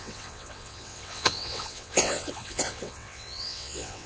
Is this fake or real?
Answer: fake